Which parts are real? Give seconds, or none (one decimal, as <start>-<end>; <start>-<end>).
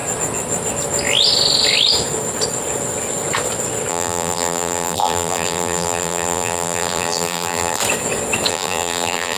0.0-3.9; 7.8-8.5